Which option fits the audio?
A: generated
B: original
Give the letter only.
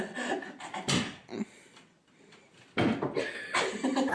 B